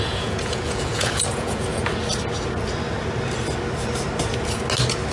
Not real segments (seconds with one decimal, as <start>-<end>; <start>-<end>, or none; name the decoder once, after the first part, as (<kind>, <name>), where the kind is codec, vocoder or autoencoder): 0.0-1.8 (vocoder, Vocos)